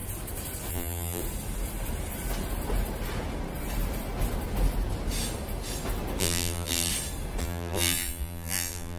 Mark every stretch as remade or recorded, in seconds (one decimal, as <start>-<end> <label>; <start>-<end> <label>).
0.0-0.7 recorded; 0.7-1.2 remade; 1.2-6.2 recorded; 6.2-6.9 remade; 6.9-7.4 recorded; 7.4-9.0 remade